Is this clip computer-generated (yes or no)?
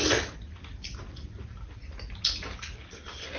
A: no